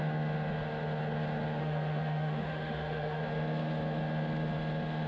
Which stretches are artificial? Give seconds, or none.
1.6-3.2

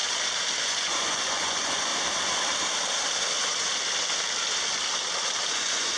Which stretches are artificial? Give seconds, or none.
0.6-1.9; 5.5-6.0

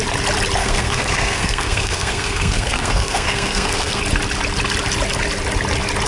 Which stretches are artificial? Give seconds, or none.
0.6-4.0

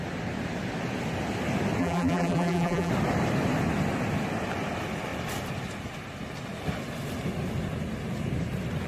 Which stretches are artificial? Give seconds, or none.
1.8-2.9